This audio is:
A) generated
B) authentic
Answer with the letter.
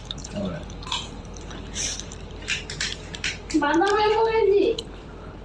A